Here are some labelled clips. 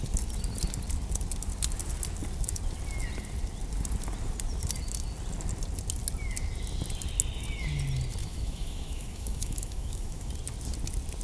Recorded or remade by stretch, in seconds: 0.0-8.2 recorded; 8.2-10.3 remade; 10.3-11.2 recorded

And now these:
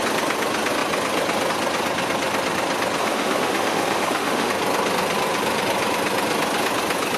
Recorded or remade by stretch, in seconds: 0.0-3.0 recorded; 3.0-4.5 remade; 4.5-7.2 recorded

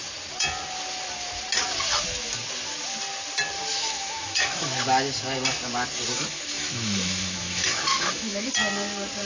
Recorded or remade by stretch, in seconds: 0.0-3.7 recorded; 3.7-4.7 remade; 4.7-6.1 recorded; 6.1-8.5 remade; 8.5-9.3 recorded